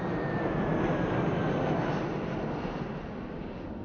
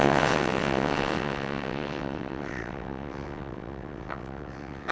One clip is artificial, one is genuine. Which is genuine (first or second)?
first